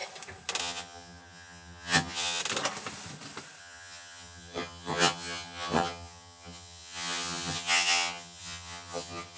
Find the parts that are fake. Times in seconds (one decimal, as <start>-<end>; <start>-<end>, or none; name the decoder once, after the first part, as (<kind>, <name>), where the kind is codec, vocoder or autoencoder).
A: 0.6-2.4 (vocoder, HiFi-GAN); 3.6-9.4